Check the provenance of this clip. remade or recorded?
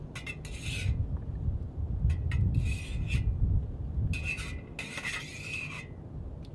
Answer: recorded